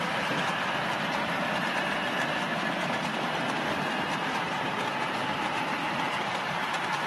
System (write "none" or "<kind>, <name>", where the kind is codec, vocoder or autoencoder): vocoder, BigVGAN v2